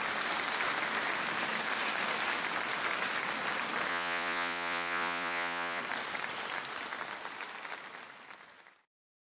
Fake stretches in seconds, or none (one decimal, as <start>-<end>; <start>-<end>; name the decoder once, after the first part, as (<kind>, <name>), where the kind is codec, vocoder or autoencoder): 3.9-5.8 (vocoder, Vocos)